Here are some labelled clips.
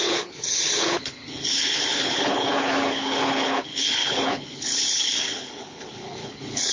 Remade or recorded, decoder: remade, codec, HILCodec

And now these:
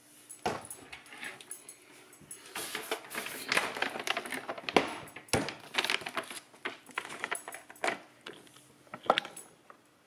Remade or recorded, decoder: recorded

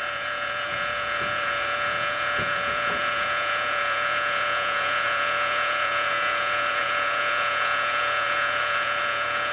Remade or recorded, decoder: remade, vocoder, Vocos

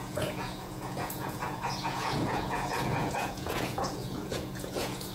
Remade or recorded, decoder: remade, vocoder, Vocos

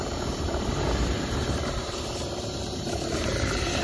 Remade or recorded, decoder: remade, vocoder, BigVGAN v2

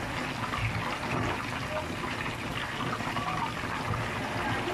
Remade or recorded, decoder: recorded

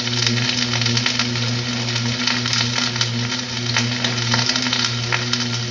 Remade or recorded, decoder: recorded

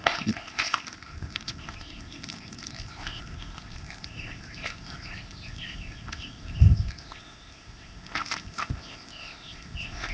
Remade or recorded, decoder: remade, codec, ZipCodec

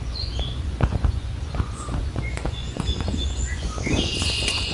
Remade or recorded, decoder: remade, vocoder, Vocos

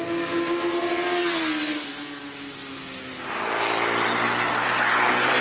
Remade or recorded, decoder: recorded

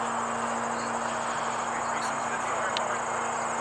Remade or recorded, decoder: recorded